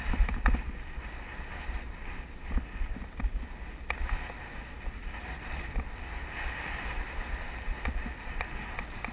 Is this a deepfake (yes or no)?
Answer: no